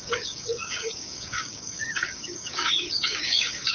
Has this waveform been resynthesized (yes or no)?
yes